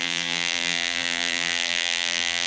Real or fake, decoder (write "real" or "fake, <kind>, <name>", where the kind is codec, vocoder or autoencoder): fake, vocoder, BigVGAN v2